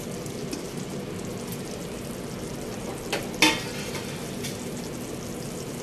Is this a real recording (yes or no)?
yes